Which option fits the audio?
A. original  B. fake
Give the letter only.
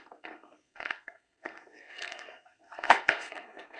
B